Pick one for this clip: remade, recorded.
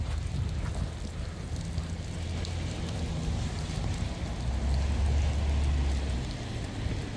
recorded